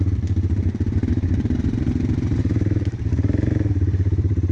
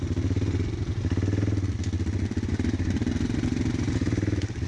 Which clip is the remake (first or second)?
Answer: first